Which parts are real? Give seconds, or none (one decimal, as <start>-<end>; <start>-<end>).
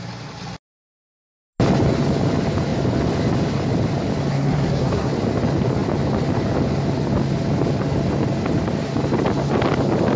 0.0-4.3; 5.1-10.2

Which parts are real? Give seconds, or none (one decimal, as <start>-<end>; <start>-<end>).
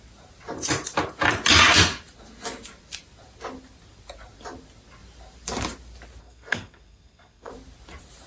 0.0-6.2; 7.5-8.3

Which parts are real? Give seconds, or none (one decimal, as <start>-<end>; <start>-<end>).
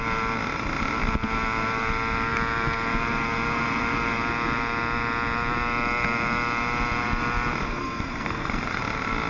0.0-7.8; 8.8-9.3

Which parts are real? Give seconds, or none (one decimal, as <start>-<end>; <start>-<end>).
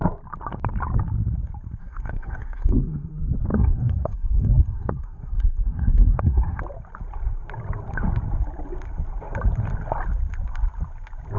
0.0-1.8; 3.1-3.5; 6.6-11.4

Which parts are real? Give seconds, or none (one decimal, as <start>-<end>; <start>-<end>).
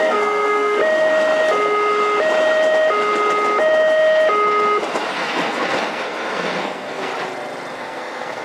0.8-5.1; 7.1-7.7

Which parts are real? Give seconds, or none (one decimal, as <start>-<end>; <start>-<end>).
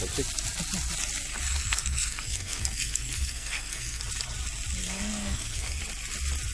0.0-1.5; 4.0-4.8; 5.8-6.5